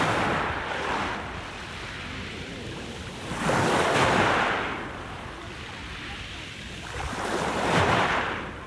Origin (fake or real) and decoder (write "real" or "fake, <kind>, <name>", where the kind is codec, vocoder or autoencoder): real